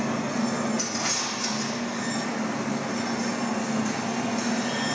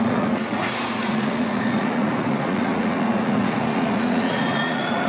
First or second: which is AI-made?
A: second